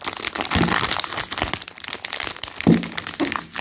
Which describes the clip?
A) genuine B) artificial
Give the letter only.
A